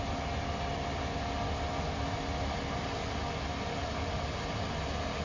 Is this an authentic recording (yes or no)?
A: yes